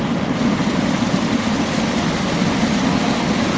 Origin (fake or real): real